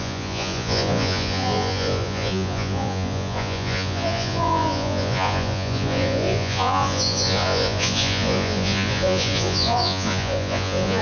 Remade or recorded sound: remade